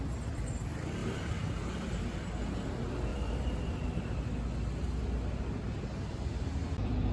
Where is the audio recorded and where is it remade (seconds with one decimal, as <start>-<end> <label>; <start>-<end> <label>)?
0.0-1.0 recorded; 1.0-2.0 remade; 2.0-3.1 recorded; 3.1-4.2 remade; 4.2-7.1 recorded